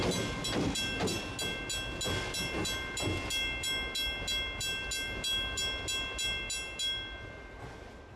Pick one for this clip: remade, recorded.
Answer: recorded